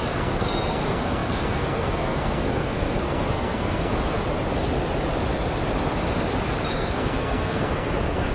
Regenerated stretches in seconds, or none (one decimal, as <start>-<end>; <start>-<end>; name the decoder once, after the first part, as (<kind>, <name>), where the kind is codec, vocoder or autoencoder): 0.0-3.9 (codec, SNAC); 6.7-8.3